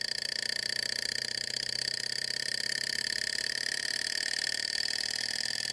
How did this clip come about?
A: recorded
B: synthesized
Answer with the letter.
A